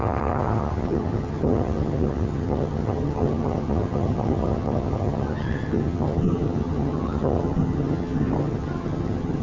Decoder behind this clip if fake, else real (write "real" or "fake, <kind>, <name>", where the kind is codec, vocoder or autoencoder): fake, vocoder, HiFi-GAN